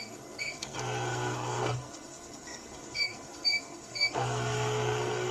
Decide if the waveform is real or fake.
fake